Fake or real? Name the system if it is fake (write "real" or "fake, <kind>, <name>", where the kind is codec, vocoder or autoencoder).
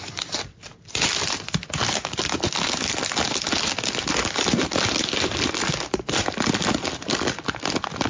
real